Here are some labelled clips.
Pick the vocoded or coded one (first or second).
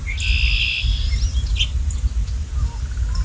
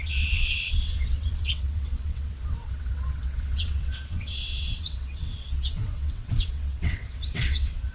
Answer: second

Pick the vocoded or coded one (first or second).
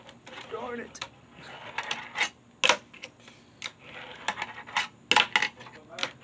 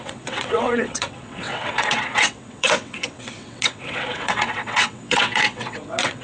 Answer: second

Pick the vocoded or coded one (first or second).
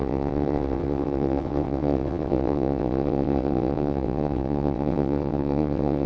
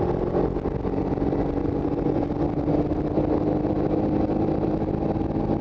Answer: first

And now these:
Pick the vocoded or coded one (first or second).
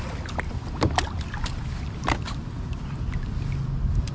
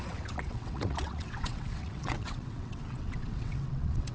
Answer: second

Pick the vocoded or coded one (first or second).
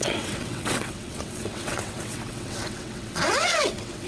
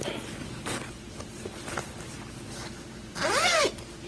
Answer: first